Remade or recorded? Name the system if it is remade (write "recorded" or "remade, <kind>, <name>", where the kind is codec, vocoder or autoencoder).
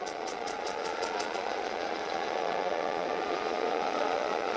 remade, vocoder, Vocos